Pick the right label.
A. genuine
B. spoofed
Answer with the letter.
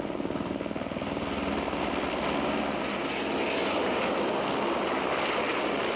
A